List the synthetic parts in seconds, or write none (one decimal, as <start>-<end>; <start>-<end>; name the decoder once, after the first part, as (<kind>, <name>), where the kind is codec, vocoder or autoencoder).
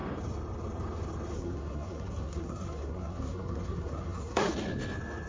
1.3-4.5 (codec, SNAC)